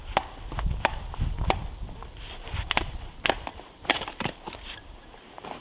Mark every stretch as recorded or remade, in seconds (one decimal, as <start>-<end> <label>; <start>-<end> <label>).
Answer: 0.0-3.5 recorded; 3.5-5.6 remade